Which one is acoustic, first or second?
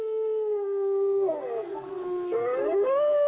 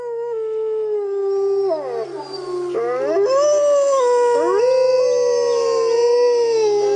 second